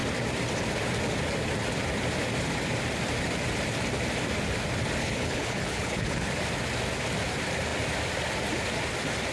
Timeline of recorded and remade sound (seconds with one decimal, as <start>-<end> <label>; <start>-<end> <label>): 0.0-5.0 recorded; 5.0-6.3 remade; 6.3-9.3 recorded